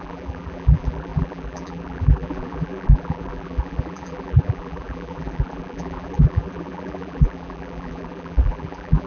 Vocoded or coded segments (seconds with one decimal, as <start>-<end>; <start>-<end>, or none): 0.0-9.1